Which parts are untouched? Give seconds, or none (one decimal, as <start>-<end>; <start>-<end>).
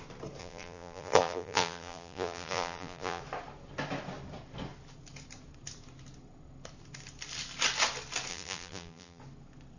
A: 0.0-0.4; 3.2-8.3; 9.2-9.8